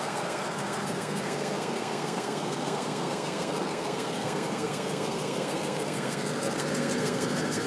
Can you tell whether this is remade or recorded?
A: remade